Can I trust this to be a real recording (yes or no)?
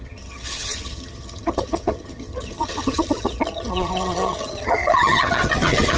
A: no